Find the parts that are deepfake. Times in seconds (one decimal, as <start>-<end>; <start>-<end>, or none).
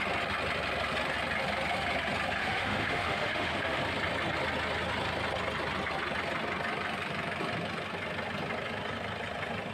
2.4-3.8